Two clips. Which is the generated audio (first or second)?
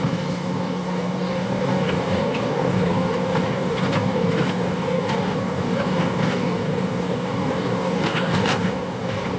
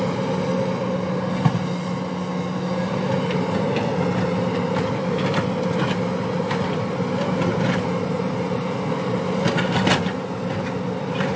first